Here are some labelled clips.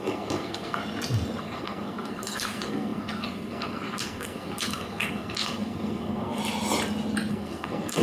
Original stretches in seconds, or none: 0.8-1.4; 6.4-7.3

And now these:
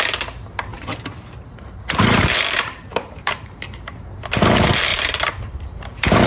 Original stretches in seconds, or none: 0.0-0.7; 4.2-4.9

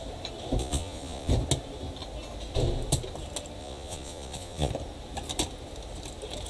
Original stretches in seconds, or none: 0.0-0.6; 1.3-3.6; 4.7-6.5

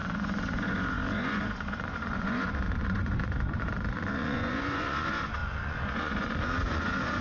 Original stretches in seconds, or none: none